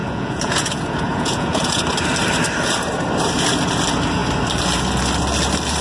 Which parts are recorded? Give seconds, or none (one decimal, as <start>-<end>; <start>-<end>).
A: 1.8-5.8